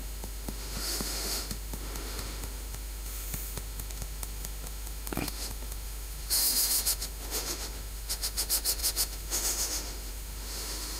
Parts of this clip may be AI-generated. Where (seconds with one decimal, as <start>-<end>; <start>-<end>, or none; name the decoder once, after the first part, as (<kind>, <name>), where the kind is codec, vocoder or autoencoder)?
0.0-11.0 (autoencoder, DAC-VAE)

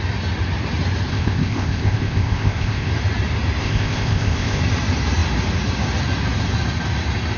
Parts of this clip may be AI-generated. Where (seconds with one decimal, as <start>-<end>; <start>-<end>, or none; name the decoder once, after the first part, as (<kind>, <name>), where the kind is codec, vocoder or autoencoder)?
1.1-2.9 (codec, ZipCodec); 3.6-4.6

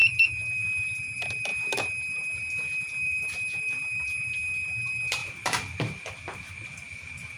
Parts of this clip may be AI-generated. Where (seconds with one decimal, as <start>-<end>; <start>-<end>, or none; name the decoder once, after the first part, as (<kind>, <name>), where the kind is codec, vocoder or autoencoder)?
0.0-7.4 (vocoder, BigVGAN v2)

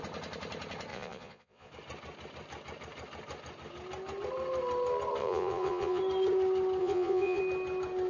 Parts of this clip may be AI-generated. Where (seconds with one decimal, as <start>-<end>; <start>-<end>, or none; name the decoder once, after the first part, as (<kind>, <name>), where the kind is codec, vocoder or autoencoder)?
0.9-1.7 (vocoder, Vocos); 5.2-6.0; 6.8-7.4

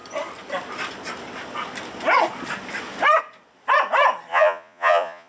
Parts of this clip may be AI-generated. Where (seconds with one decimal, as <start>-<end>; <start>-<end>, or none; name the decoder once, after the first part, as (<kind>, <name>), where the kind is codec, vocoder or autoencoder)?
4.3-5.3 (vocoder, Vocos)

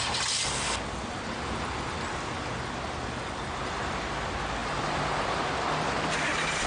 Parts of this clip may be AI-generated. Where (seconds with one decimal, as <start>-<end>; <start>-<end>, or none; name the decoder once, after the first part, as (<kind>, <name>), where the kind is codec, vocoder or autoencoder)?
4.6-5.6 (vocoder, BigVGAN v2)

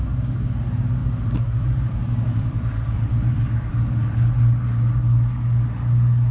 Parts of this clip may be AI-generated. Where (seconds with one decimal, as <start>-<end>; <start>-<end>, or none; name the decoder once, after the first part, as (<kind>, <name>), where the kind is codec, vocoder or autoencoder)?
1.0-3.7 (vocoder, BigVGAN v2)